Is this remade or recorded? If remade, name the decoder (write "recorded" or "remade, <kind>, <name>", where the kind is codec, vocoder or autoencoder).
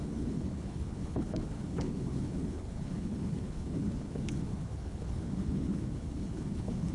remade, codec, HILCodec